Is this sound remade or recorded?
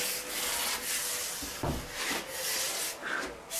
recorded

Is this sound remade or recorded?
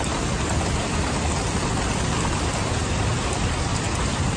recorded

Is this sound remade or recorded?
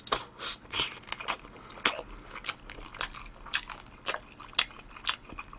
recorded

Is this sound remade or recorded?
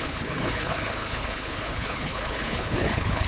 remade